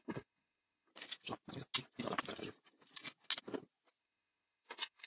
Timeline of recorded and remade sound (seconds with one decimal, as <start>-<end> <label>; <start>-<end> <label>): 0.0-0.9 remade; 0.9-4.0 recorded; 4.0-5.1 remade